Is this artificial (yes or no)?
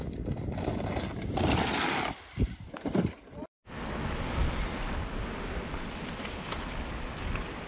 no